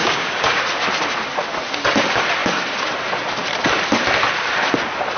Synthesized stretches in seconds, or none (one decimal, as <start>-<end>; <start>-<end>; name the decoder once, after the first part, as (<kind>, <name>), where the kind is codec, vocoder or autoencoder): 0.0-0.6 (codec, DAC)

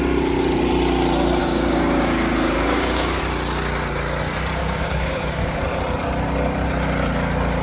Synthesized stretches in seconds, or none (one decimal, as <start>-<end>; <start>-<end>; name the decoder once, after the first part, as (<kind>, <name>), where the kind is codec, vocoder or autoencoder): 1.4-3.2 (codec, DAC); 4.6-5.6

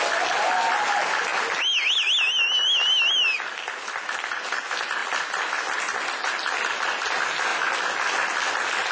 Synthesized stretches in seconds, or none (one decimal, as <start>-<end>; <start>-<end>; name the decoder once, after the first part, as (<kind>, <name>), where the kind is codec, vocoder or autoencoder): none

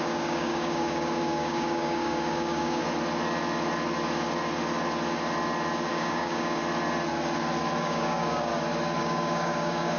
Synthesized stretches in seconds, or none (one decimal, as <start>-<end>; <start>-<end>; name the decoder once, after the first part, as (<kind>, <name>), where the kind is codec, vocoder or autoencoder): 0.0-2.8 (codec, DAC); 5.9-6.6; 7.8-8.5; 9.0-10.0

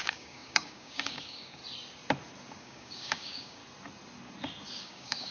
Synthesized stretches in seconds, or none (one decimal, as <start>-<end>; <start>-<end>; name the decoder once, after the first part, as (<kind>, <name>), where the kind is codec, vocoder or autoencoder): 0.0-1.6 (codec, DAC); 2.6-3.6; 4.8-5.3

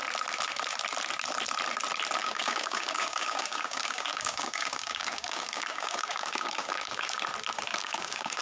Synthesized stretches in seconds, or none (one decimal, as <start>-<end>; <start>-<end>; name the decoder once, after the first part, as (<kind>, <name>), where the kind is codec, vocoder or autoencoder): 2.2-7.2 (codec, DAC); 7.7-8.4

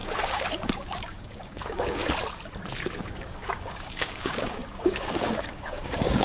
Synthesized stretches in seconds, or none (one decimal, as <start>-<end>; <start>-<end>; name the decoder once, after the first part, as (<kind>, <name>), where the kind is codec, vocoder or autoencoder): 0.0-2.0 (codec, DAC); 3.0-6.2

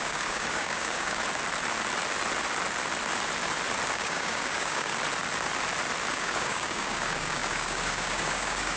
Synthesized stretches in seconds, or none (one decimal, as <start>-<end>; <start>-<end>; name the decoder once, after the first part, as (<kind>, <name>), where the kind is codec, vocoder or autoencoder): 0.0-1.2 (codec, DAC); 3.9-4.9; 6.1-8.8